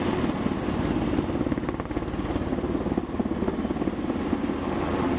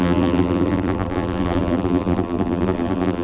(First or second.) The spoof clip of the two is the second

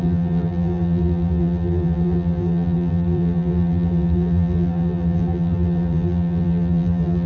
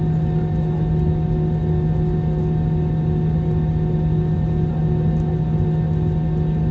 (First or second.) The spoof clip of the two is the first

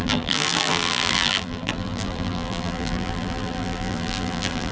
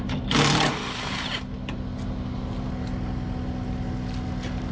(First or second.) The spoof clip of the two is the first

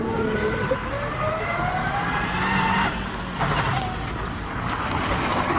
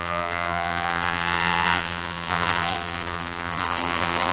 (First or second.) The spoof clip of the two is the second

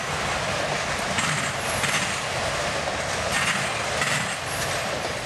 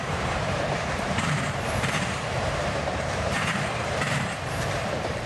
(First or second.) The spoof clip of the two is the second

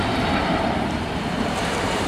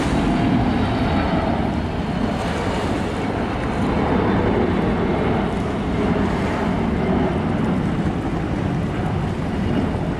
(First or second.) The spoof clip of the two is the first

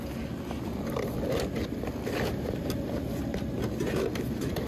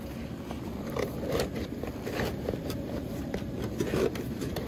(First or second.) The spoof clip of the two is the second